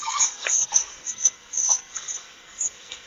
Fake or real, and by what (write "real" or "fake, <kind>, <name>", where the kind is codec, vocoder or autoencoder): fake, codec, SNAC